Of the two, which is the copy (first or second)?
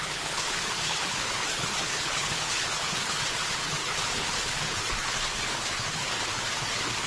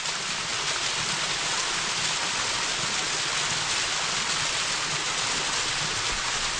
first